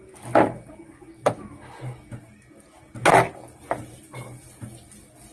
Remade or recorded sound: recorded